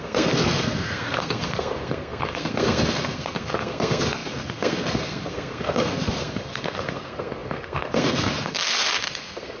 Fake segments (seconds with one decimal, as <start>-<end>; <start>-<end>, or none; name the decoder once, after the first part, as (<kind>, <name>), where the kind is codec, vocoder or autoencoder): 0.0-9.6 (codec, SNAC)